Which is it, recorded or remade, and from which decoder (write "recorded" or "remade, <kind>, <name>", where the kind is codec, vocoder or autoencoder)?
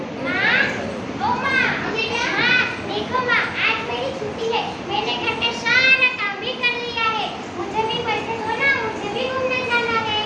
recorded